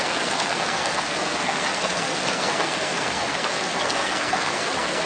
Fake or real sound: fake